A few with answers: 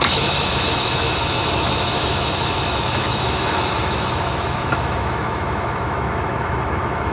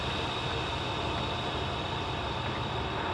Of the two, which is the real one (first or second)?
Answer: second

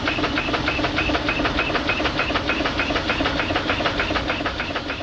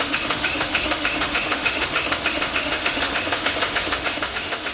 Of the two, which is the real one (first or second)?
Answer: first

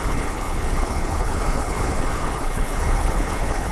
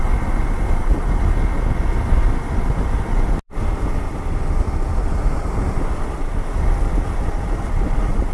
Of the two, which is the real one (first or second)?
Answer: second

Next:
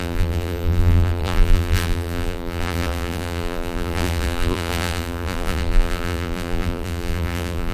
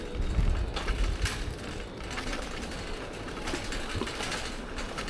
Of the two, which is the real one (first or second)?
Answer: second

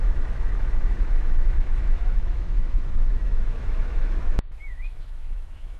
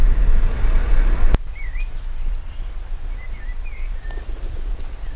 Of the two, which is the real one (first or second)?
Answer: second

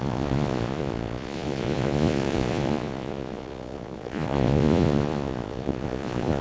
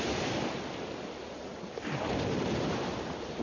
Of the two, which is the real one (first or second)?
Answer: second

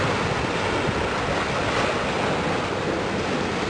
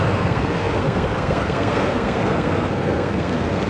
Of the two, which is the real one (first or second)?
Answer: first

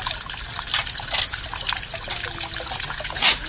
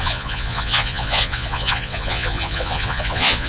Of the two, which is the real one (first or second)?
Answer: first